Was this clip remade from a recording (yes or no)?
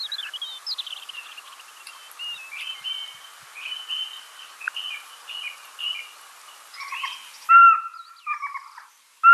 no